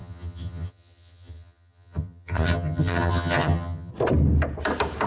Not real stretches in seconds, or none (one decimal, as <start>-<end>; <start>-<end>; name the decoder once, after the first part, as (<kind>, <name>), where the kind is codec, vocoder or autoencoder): 0.0-3.9 (vocoder, HiFi-GAN)